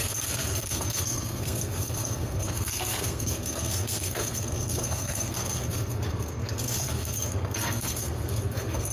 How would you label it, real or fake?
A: fake